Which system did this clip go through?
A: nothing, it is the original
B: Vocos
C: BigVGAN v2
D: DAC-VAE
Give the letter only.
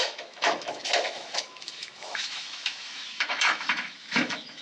D